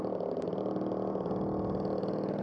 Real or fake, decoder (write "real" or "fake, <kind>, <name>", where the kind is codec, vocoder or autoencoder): real